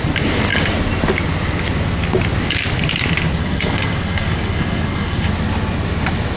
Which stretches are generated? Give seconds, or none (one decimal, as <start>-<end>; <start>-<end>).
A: 3.4-5.3

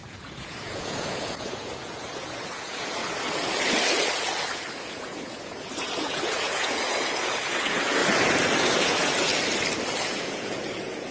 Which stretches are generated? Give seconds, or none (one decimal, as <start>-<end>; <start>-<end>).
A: 0.0-3.0; 4.8-8.0; 8.6-9.3; 10.0-11.1

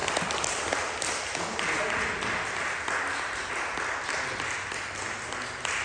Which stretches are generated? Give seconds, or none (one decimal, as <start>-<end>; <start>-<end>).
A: none

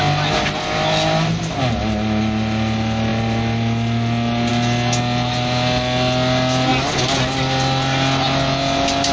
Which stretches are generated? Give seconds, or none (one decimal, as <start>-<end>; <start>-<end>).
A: none

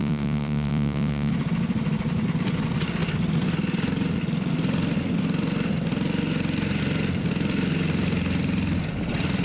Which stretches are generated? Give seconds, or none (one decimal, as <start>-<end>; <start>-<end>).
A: 0.0-1.3

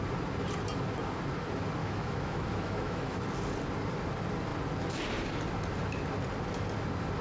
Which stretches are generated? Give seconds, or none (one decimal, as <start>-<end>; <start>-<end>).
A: 1.8-3.2